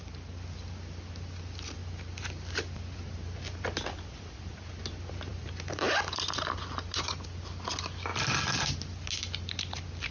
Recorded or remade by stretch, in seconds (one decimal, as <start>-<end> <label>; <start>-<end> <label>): 0.0-5.3 recorded; 5.3-6.6 remade; 6.6-8.1 recorded; 8.1-8.7 remade; 8.7-10.1 recorded